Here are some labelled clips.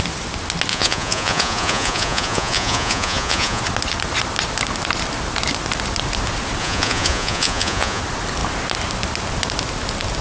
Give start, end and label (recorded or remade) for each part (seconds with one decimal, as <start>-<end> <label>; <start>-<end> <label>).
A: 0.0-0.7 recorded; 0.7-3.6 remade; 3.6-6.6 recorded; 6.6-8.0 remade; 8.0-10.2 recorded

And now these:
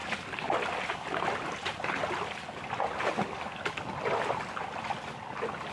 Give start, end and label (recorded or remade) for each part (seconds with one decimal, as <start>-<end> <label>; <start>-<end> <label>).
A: 0.0-5.7 recorded

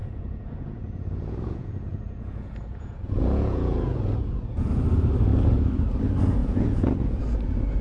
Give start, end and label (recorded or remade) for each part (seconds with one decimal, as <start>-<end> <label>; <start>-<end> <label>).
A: 0.0-4.7 remade; 4.7-6.4 recorded; 6.4-7.2 remade; 7.2-7.8 recorded

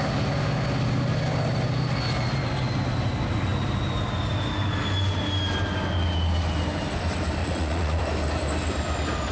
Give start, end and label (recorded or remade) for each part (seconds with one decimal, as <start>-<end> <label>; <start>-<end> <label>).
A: 0.0-7.4 recorded; 7.4-8.0 remade; 8.0-9.3 recorded